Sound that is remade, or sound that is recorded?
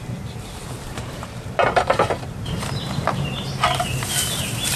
remade